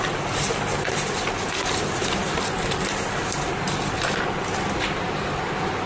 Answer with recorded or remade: recorded